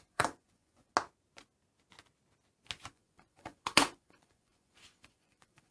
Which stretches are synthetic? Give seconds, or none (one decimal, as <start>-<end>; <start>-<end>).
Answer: 0.0-0.9; 2.9-5.7